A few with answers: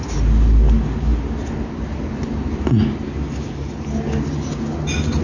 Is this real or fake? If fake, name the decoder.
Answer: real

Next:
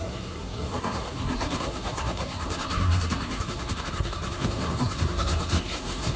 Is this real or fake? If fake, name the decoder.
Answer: fake, codec, SNAC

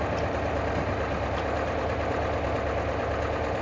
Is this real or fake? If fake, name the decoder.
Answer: real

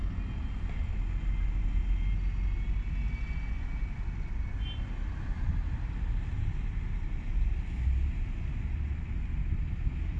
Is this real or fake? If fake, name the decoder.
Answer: real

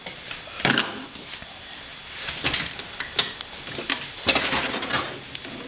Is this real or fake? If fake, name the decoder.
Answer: real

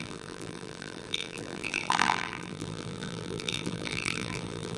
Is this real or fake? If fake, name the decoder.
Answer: fake, vocoder, BigVGAN v2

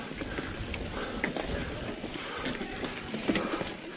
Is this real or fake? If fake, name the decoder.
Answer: real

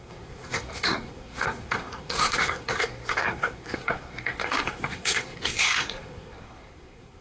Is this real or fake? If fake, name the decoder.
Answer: fake, codec, SNAC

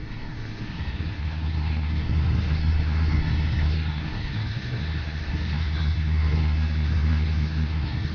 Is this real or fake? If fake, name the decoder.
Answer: fake, codec, SNAC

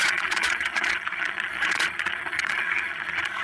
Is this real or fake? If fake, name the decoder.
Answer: fake, vocoder, Vocos